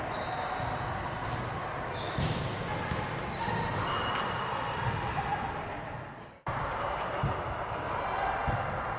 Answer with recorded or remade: recorded